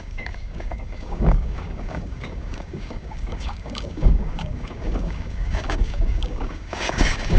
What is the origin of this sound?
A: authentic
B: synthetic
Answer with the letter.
B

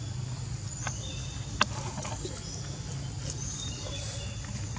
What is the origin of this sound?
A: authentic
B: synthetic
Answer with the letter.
A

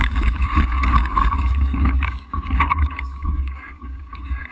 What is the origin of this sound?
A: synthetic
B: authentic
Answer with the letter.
A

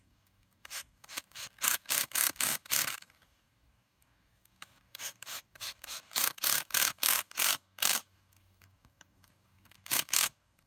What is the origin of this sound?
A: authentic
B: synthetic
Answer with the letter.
B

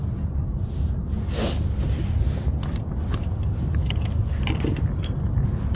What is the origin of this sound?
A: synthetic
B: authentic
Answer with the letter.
B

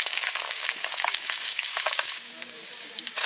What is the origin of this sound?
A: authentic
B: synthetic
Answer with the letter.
B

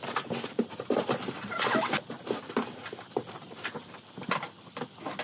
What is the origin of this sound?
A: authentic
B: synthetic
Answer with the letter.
A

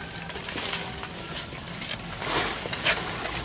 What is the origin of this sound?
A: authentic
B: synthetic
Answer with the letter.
A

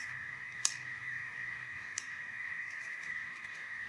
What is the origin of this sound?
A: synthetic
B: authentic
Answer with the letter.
A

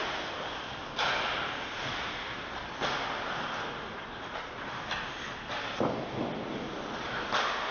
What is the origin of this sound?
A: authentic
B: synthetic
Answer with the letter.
A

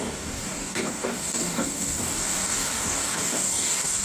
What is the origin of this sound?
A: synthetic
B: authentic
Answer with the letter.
A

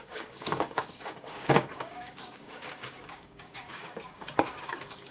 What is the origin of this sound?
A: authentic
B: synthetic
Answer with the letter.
B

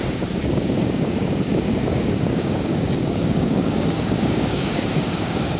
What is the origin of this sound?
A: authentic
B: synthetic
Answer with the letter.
B